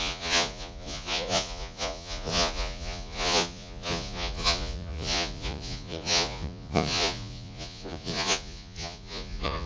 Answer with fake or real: fake